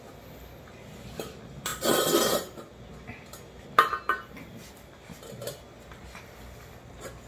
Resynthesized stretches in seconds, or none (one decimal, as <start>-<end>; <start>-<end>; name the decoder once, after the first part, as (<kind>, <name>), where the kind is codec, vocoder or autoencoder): none